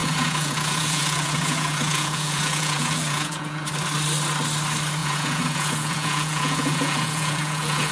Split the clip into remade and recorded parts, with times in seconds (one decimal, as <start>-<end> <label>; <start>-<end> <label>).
0.0-3.7 remade; 3.7-5.0 recorded; 5.0-7.9 remade